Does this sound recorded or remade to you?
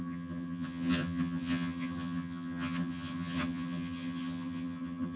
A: remade